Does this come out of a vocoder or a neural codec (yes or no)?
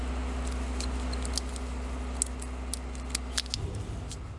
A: no